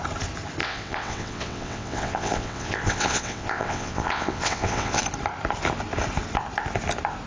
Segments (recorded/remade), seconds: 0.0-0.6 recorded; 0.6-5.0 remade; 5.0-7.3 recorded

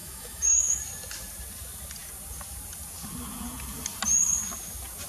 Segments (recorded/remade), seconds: 0.0-0.8 remade; 0.8-5.1 recorded

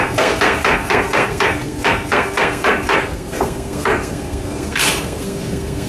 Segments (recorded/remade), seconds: 0.0-5.9 remade

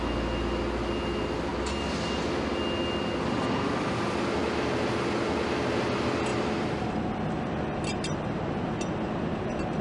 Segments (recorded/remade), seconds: 0.0-9.8 recorded

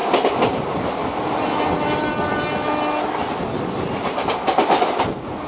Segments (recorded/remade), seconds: 0.0-2.6 remade; 2.6-5.5 recorded